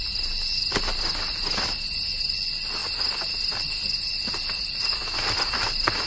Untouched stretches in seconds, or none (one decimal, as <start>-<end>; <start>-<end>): 0.0-6.1